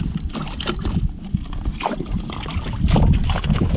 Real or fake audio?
real